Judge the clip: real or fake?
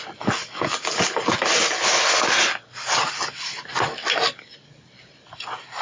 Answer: real